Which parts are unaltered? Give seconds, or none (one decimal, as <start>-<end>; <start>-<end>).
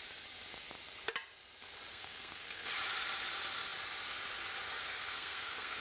0.0-1.9; 2.7-4.8